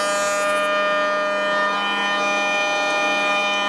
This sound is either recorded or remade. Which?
recorded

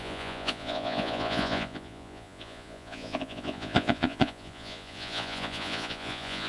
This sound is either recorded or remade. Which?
remade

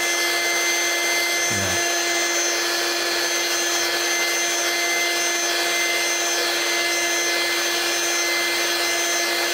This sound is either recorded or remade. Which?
recorded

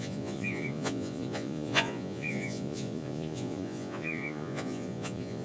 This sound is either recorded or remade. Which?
remade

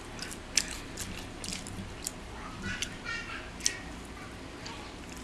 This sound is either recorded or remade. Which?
recorded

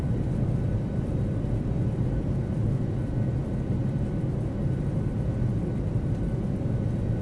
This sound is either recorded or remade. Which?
recorded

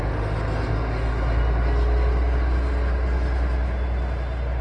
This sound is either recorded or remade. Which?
recorded